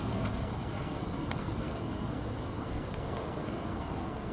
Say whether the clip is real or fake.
fake